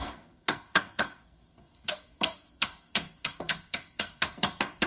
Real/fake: fake